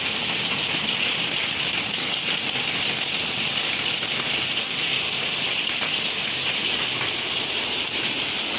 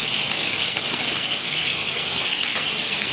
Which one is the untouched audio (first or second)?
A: first